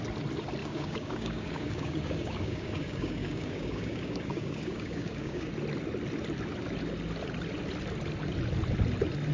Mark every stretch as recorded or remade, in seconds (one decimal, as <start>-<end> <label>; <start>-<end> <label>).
0.0-0.6 recorded; 0.6-5.5 remade; 5.5-9.3 recorded